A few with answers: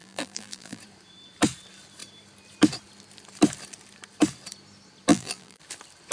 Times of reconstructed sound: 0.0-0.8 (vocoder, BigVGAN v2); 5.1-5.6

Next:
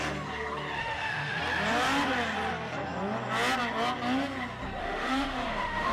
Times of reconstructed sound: 0.8-1.4 (autoencoder, DAC-VAE); 4.8-5.9

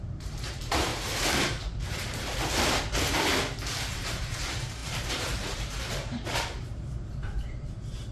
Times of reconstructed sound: 0.0-3.3 (vocoder, BigVGAN v2); 3.9-8.1

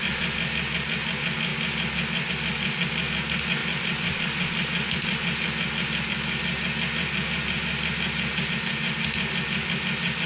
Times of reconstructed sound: none

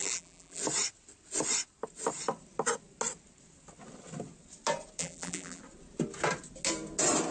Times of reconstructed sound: 0.0-0.6 (vocoder, BigVGAN v2); 5.0-5.6

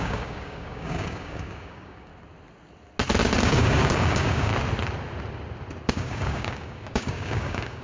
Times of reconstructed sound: 0.0-2.1 (codec, DAC); 3.4-4.5; 5.9-7.8